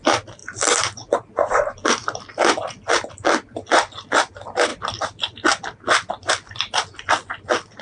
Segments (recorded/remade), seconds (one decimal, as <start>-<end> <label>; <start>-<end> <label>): 0.0-7.8 recorded